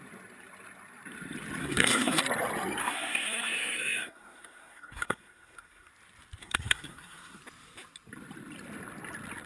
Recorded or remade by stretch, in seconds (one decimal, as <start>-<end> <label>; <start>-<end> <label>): 0.0-1.6 recorded; 1.6-2.2 remade; 2.2-2.8 recorded; 2.8-5.9 remade; 5.9-6.4 recorded; 6.4-7.4 remade; 7.4-9.5 recorded